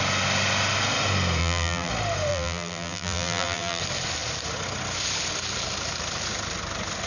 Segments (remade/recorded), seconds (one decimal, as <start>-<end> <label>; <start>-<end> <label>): 0.0-1.4 recorded; 1.4-1.9 remade; 1.9-2.3 recorded; 2.3-3.8 remade; 3.8-7.1 recorded